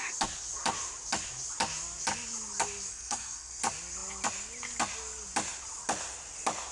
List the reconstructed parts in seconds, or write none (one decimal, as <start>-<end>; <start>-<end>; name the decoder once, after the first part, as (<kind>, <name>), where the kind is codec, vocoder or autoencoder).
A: 2.9-3.6 (codec, SNAC)